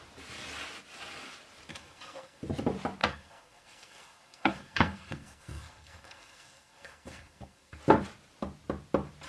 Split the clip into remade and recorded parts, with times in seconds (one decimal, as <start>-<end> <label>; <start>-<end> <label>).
0.0-1.7 recorded; 1.7-2.4 remade; 2.4-3.0 recorded; 3.0-7.8 remade; 7.8-9.3 recorded